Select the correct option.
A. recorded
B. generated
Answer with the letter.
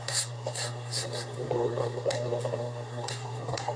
B